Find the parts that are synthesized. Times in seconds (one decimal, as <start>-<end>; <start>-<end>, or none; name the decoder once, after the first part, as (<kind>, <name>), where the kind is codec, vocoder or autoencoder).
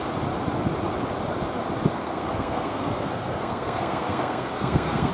1.9-5.1 (codec, SNAC)